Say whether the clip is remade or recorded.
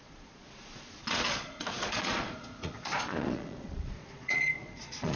remade